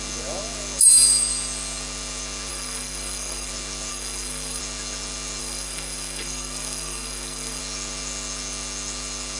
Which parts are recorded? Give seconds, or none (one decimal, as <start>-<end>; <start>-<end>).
0.0-2.5; 3.5-3.9; 4.6-5.4; 7.6-9.4